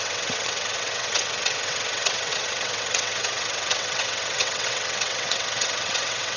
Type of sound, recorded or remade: remade